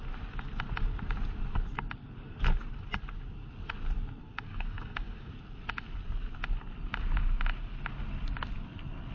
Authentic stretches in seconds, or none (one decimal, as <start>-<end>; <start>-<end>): 0.0-4.2; 5.3-9.1